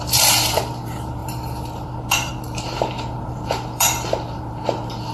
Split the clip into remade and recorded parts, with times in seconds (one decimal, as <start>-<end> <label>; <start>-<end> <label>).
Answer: 0.0-5.1 remade